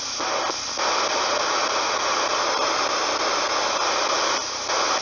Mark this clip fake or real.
real